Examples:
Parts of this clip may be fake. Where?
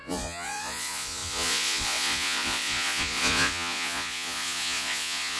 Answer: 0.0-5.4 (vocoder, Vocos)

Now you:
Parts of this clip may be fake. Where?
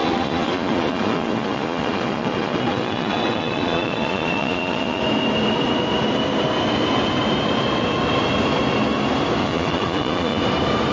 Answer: 0.0-5.0 (vocoder, Vocos); 9.4-10.4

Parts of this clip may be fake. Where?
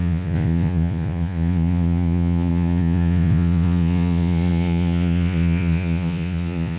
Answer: 0.0-6.8 (vocoder, Vocos)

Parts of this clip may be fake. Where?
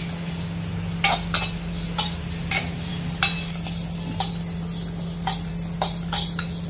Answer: none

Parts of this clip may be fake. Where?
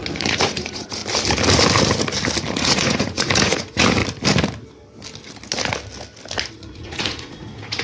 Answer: 0.0-1.0 (vocoder, Vocos); 2.5-4.0; 6.5-7.8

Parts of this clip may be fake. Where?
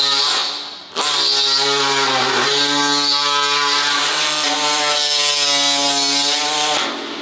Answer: none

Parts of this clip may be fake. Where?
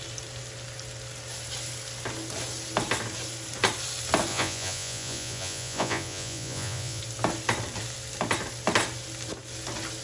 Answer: 4.3-7.0 (vocoder, Vocos)